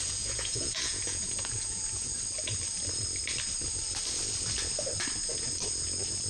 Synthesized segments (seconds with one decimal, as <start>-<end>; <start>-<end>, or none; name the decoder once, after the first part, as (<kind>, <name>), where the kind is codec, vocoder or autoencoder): 0.0-2.1 (vocoder, Vocos)